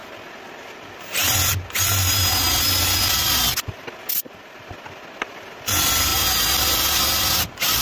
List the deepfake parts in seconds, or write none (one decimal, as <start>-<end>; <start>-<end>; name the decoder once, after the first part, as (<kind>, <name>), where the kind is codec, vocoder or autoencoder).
none